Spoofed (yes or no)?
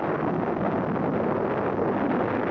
no